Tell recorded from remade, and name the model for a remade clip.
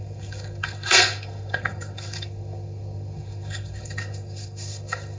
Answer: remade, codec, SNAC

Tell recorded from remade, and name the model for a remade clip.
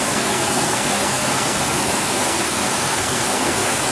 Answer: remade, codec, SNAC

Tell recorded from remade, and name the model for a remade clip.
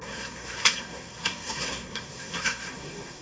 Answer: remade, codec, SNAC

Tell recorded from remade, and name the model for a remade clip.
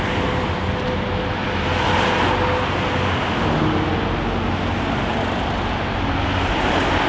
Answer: recorded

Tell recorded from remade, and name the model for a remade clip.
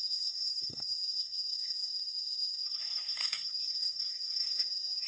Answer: remade, codec, SNAC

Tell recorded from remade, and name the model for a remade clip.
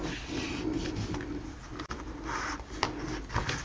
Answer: recorded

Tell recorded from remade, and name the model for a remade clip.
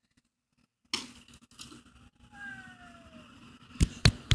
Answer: recorded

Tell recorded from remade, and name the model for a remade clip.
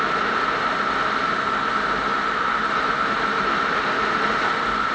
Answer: recorded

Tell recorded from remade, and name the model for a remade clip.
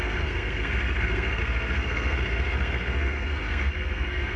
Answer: remade, codec, SNAC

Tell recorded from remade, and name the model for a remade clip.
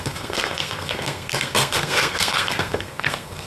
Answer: remade, codec, SNAC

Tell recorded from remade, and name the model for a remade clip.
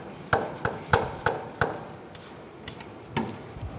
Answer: recorded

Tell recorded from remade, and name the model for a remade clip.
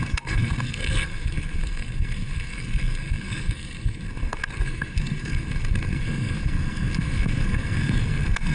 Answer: remade, codec, SNAC